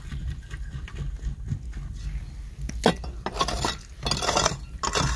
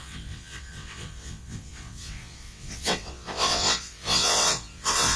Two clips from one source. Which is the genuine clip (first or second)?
first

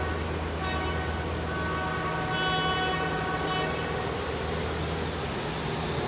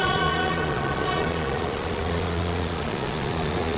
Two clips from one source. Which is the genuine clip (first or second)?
first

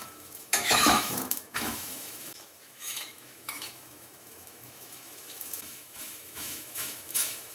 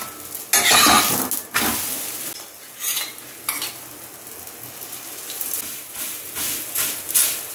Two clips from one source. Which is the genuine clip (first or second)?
second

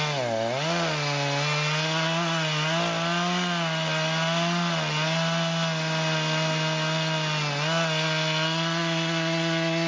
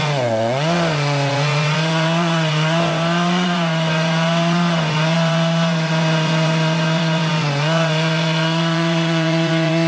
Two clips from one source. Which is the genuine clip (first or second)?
first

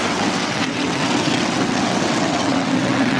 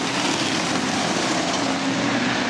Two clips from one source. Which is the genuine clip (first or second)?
second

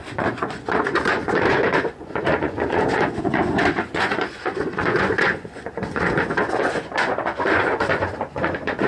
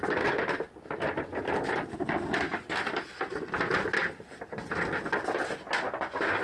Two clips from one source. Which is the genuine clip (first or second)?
second